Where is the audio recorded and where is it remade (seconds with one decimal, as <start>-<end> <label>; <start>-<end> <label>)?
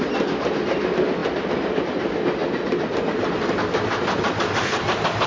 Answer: 0.0-5.3 recorded